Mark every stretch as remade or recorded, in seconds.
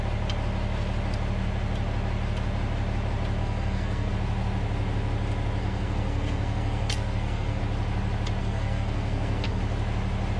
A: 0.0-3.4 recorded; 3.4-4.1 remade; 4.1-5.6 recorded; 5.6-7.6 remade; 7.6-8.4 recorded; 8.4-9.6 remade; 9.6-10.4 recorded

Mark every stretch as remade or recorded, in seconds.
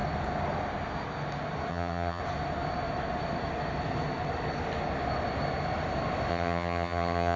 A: 0.0-1.7 recorded; 1.7-2.2 remade; 2.2-6.3 recorded; 6.3-7.4 remade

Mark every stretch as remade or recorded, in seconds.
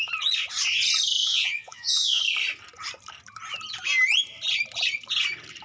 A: 0.0-1.2 recorded; 1.2-2.2 remade; 2.2-5.6 recorded